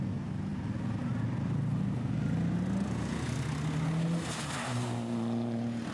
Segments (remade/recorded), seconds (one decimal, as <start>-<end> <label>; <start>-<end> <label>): 0.0-5.9 recorded